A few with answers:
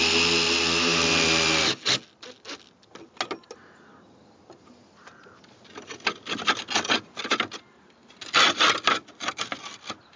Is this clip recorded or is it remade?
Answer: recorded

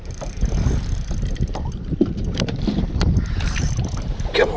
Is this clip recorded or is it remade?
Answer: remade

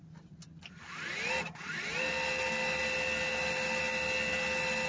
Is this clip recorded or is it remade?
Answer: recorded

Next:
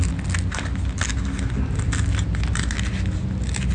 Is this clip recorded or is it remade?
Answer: recorded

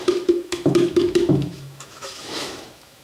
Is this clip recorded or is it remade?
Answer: remade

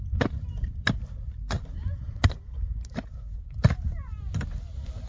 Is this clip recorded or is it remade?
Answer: recorded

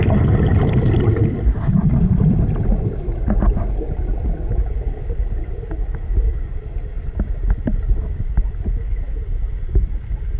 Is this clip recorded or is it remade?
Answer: remade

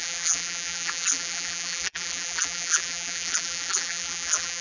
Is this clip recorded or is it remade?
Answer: remade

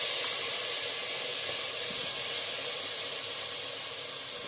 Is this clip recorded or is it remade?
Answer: recorded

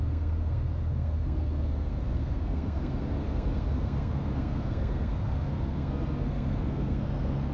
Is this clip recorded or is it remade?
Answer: remade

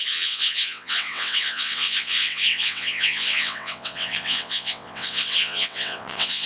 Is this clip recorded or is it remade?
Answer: remade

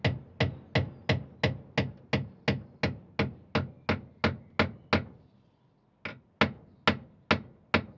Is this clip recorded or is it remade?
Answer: recorded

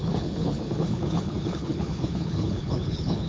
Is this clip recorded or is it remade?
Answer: remade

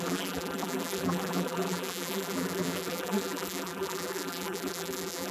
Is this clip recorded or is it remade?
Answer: remade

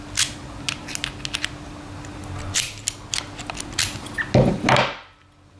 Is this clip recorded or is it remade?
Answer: recorded